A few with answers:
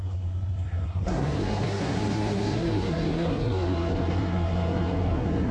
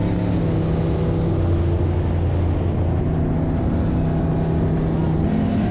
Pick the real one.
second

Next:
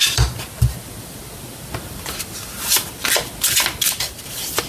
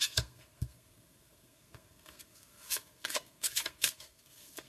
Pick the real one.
first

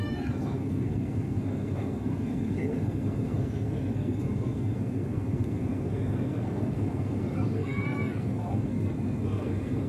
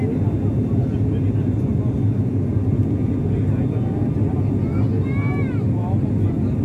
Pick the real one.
second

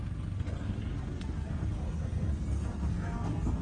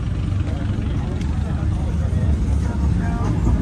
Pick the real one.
second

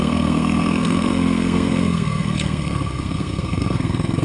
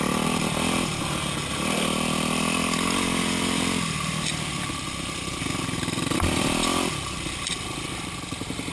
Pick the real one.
second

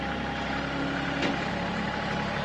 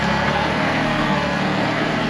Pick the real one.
first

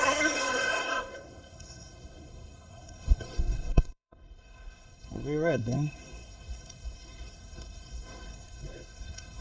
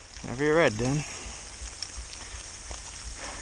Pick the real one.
second